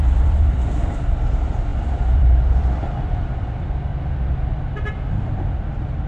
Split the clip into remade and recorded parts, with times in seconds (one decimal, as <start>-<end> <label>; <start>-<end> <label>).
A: 0.0-3.9 remade; 3.9-5.1 recorded; 5.1-6.1 remade